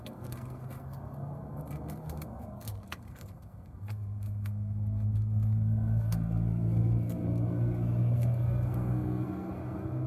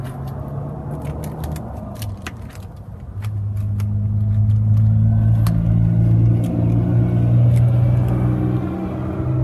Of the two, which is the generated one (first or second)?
first